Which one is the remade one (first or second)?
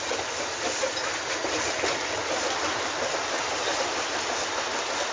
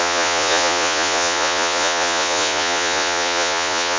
second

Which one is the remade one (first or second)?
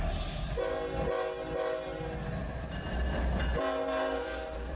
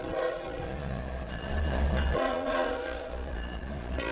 second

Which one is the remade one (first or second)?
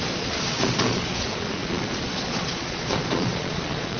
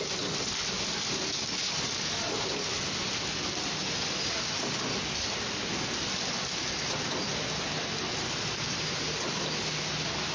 first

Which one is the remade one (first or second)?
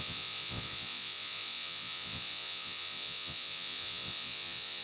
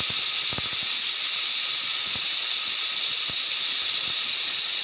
first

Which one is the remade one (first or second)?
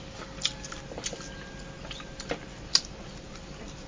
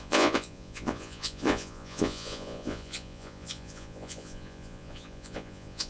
second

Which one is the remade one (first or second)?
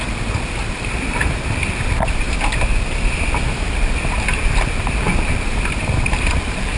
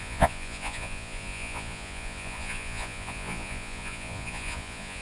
second